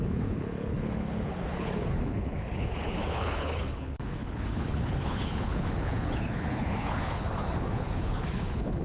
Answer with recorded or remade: remade